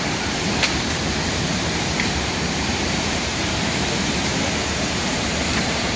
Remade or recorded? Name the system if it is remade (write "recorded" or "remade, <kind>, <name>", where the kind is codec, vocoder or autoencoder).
remade, vocoder, BigVGAN v2